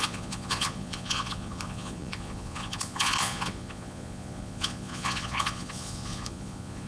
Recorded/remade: remade